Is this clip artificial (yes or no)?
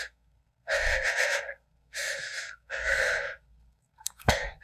yes